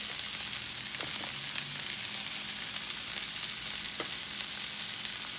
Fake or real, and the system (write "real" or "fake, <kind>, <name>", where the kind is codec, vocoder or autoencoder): real